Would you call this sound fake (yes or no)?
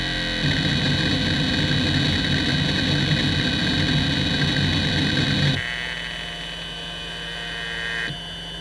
no